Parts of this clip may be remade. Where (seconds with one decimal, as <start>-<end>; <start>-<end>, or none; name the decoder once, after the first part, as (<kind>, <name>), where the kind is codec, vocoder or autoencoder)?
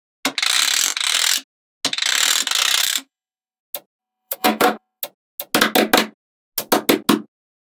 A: 2.8-3.6 (codec, SNAC); 4.0-5.0